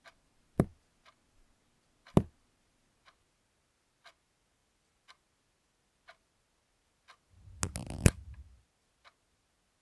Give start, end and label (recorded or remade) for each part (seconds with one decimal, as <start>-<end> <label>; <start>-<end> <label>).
0.0-9.8 recorded